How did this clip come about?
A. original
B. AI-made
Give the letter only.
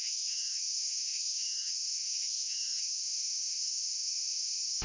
B